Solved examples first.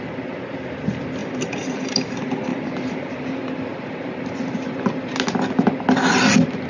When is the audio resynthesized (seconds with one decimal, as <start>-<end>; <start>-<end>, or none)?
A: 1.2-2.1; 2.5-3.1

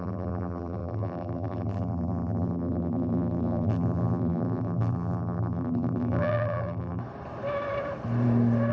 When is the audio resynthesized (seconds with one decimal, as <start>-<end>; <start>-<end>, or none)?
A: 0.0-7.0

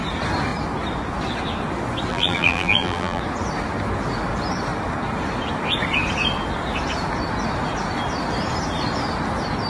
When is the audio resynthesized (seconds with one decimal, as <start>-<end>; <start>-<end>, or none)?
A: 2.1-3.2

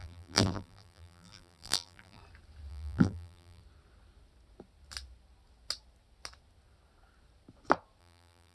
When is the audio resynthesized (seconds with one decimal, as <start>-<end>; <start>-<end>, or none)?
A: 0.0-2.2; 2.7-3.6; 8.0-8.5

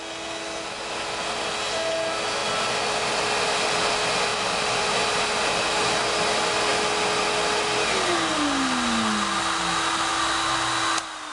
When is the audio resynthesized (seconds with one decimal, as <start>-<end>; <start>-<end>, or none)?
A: 4.3-5.0

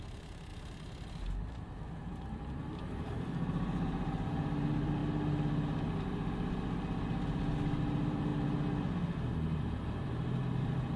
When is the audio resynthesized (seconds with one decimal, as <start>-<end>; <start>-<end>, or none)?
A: 0.0-0.5; 1.5-5.0; 7.8-8.3; 9.6-11.0